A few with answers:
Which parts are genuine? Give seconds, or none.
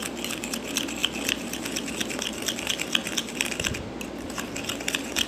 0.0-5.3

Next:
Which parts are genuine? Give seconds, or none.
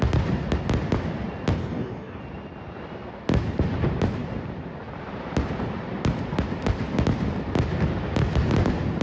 0.0-1.6; 2.2-9.0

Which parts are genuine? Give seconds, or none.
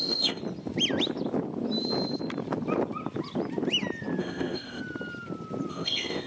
0.4-4.2; 4.8-5.7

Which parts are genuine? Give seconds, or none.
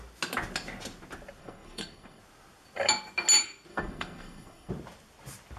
0.0-1.4; 2.2-3.7; 4.7-5.6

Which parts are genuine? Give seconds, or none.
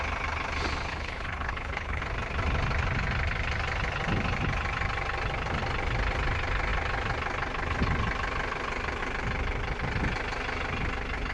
0.0-0.9; 2.0-11.3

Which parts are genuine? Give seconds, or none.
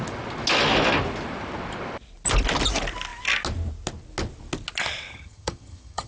0.0-5.1